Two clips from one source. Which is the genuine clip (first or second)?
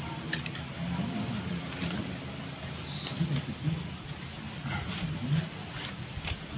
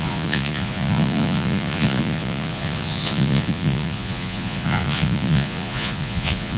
first